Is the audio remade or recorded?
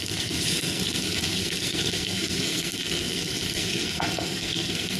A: remade